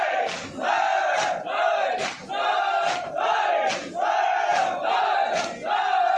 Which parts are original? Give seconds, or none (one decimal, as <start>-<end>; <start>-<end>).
0.0-0.9; 3.7-6.2